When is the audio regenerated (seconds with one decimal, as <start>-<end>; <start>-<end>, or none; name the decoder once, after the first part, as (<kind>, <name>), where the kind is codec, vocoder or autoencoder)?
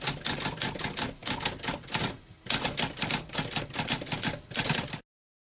none